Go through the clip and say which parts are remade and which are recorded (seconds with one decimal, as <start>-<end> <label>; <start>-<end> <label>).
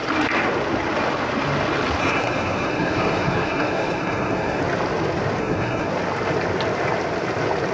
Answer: 0.0-2.0 recorded; 2.0-4.6 remade; 4.6-5.4 recorded; 5.4-5.9 remade; 5.9-7.7 recorded